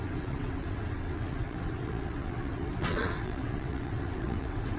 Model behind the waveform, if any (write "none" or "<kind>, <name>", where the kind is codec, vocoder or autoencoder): vocoder, WaveNeXt